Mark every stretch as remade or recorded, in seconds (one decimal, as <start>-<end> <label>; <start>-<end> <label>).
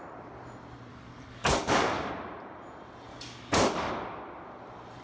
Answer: 0.0-0.9 recorded; 0.9-2.1 remade; 2.1-3.1 recorded; 3.1-3.9 remade; 3.9-5.0 recorded